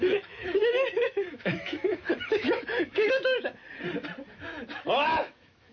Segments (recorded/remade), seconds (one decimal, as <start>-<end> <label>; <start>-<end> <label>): 0.0-3.6 remade; 3.6-4.3 recorded; 4.3-5.7 remade